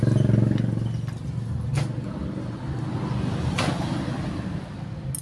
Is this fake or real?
real